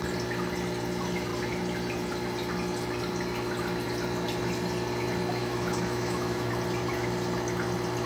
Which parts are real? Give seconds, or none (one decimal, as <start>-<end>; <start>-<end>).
0.0-5.4; 6.5-8.1